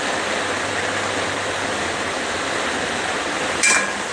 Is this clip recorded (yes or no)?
yes